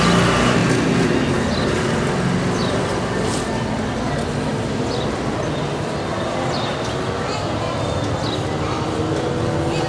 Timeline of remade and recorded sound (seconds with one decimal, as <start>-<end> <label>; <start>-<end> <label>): 0.0-9.9 recorded